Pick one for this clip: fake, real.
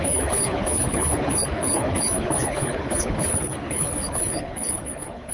fake